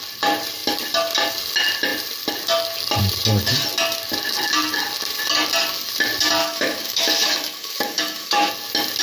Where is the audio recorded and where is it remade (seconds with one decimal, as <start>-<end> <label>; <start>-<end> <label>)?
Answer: 0.0-6.4 recorded; 6.4-8.5 remade; 8.5-9.0 recorded